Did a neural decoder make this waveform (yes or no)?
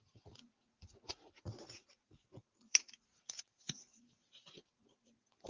yes